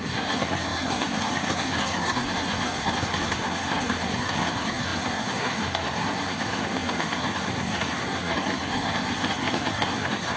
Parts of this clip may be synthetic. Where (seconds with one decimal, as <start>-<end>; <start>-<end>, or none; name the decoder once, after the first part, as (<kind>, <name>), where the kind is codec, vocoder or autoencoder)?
0.0-10.4 (codec, SNAC)